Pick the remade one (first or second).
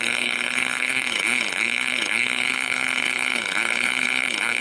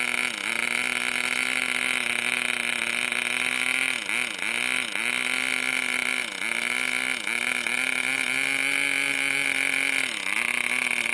first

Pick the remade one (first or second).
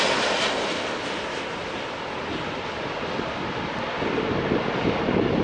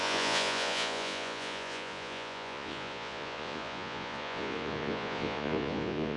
second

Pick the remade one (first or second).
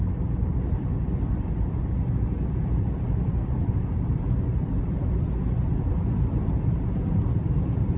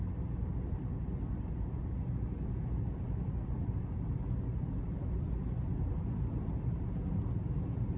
first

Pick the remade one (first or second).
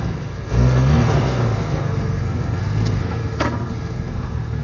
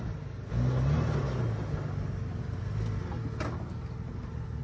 first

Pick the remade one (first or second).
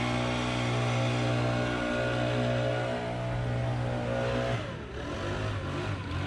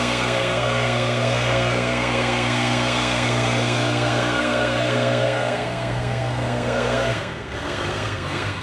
second